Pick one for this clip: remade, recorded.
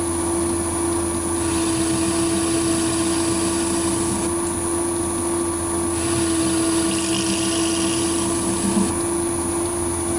recorded